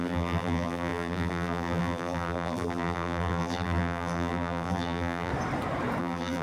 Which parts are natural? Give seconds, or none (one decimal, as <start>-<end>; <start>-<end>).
5.3-6.0